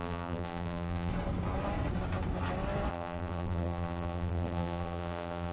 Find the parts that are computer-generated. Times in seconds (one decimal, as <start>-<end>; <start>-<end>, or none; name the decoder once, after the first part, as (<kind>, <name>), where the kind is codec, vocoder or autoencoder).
0.0-1.1 (vocoder, BigVGAN v2); 2.9-5.5